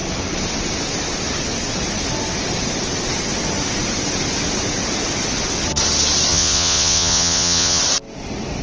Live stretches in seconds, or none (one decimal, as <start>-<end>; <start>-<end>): 0.0-6.3; 7.8-8.6